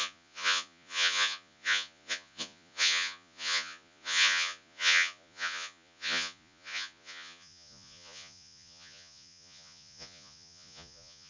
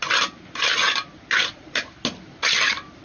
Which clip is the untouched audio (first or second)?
second